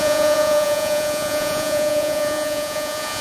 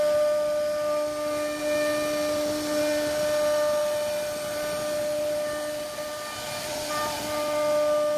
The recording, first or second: second